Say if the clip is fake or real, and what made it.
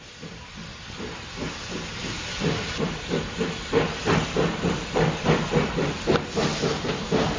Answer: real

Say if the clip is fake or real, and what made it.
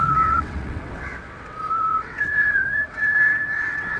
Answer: fake, vocoder, WaveNeXt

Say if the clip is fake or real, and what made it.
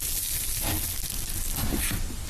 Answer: real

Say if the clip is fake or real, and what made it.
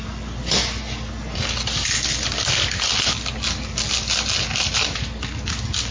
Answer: real